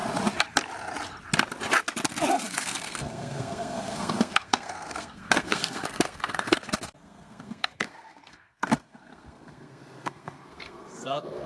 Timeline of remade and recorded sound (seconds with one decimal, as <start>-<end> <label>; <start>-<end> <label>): 0.0-2.3 recorded; 2.3-11.5 remade